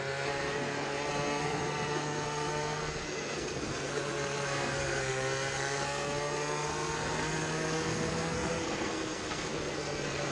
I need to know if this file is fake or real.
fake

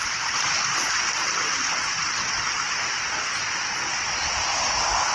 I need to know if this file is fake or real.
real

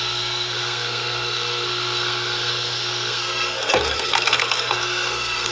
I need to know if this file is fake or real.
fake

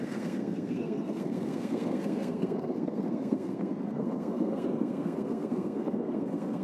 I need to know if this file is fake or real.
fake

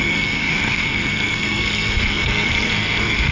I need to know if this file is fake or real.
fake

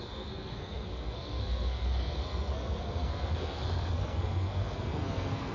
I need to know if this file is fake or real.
fake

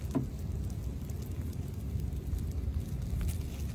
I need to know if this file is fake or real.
real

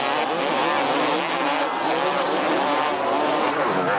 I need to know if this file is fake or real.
real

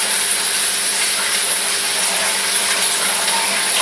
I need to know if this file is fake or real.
real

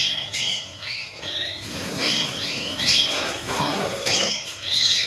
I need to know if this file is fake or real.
fake